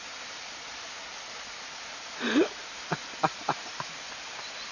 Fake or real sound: real